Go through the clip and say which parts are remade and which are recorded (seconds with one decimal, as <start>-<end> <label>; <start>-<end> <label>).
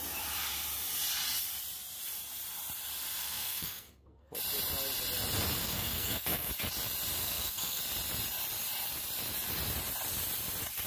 0.0-3.2 recorded; 3.2-4.3 remade; 4.3-5.6 recorded; 5.6-6.5 remade; 6.5-7.2 recorded; 7.2-7.8 remade; 7.8-10.9 recorded